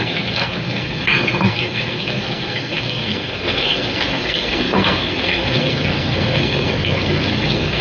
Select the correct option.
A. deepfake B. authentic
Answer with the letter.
A